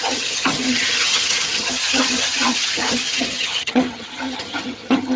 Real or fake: fake